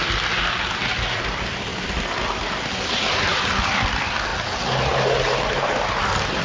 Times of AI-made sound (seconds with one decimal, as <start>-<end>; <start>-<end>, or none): 0.0-1.7; 2.9-4.3